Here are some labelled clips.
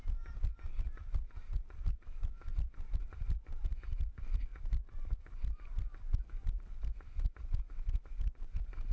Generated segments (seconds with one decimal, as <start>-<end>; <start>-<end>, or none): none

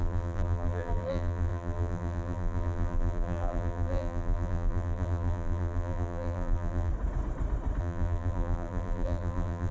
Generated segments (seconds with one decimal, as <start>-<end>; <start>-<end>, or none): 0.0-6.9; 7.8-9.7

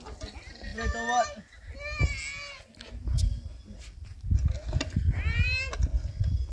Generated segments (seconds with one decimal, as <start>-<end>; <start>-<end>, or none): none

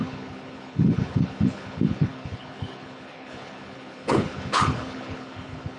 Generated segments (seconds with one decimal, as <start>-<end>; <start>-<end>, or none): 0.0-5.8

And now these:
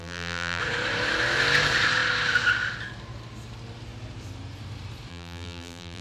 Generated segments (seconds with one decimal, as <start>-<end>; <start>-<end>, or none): 0.0-0.6; 5.1-6.0

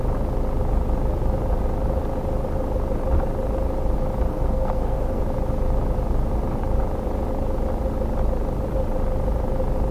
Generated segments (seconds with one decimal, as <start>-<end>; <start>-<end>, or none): 4.3-5.2